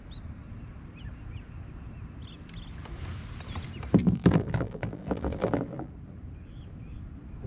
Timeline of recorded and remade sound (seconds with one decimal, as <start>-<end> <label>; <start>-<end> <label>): 0.0-4.0 recorded; 4.0-5.9 remade; 5.9-7.5 recorded